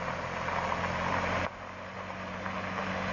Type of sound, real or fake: real